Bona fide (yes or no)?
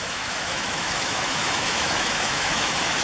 no